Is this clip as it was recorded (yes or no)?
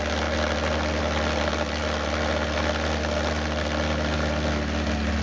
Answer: yes